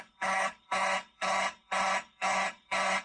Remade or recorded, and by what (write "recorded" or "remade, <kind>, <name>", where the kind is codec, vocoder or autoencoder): remade, codec, HILCodec